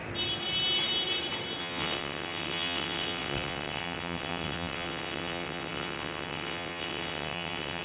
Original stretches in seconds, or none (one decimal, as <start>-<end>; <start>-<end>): 0.0-1.6